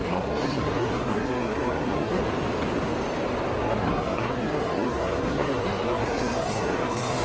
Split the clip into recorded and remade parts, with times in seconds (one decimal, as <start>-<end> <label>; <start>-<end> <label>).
0.0-2.2 remade; 2.2-3.6 recorded; 3.6-7.2 remade